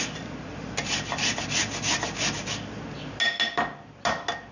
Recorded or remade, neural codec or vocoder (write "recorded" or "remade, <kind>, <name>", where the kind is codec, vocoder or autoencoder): recorded